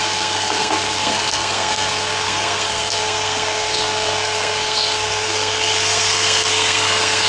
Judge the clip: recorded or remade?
remade